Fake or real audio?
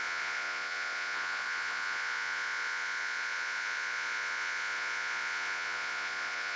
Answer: fake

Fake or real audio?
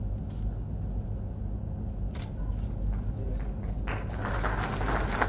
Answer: real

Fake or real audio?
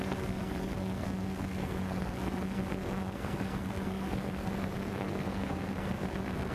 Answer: fake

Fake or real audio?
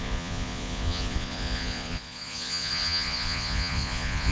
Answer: fake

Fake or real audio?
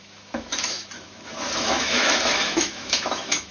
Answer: fake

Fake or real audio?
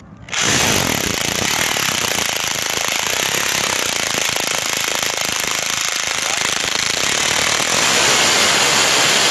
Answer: real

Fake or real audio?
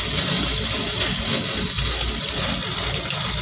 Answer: real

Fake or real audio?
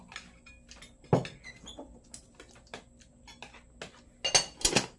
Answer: real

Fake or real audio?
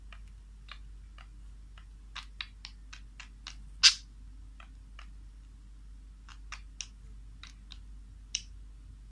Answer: real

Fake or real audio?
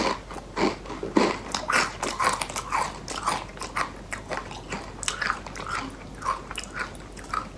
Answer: real